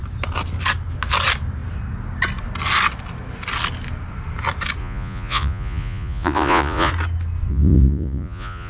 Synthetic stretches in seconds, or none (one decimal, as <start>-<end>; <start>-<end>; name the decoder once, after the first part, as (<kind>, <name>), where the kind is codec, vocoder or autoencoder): 4.8-6.9 (vocoder, Vocos); 7.5-8.7